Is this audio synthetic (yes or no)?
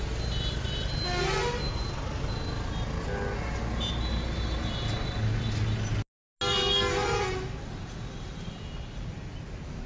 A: no